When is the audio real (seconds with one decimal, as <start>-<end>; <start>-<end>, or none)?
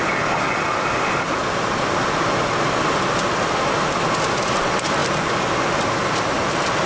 0.0-6.9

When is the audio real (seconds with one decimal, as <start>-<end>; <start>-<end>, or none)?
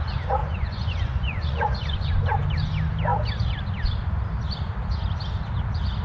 0.0-0.4; 2.1-6.0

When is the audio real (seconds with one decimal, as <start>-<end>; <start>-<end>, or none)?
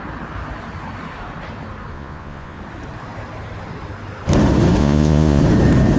0.0-1.9; 2.6-4.8; 5.4-6.0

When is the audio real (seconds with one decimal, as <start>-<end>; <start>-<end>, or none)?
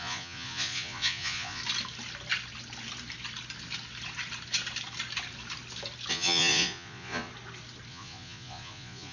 1.6-6.1; 7.3-7.9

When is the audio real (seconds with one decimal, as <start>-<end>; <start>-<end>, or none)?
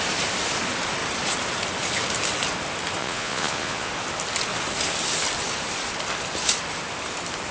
0.0-3.0; 3.9-7.5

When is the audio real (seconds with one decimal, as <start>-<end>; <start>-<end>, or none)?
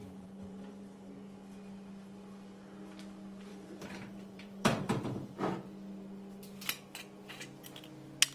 1.1-3.5; 5.4-8.3